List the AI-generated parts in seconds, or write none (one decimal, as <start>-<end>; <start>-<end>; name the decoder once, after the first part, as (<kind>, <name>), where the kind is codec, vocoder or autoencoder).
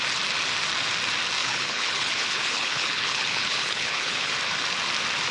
1.4-4.3 (codec, HILCodec)